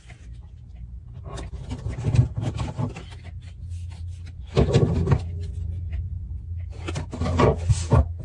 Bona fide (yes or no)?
yes